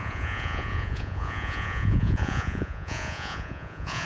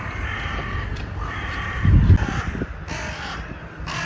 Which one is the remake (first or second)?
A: first